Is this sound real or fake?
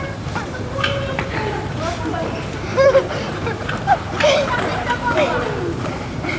fake